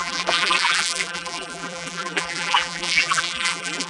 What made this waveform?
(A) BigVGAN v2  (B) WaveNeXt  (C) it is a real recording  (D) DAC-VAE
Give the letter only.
A